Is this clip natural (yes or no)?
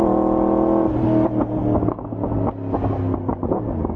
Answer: yes